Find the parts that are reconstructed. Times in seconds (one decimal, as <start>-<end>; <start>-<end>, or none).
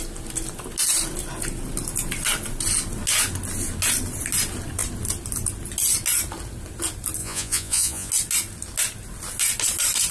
7.2-8.1